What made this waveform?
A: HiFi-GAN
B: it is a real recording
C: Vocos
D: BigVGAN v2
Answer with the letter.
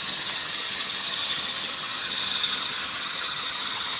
A